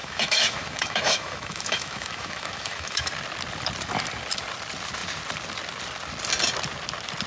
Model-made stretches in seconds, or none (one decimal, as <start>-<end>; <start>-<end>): 0.0-3.1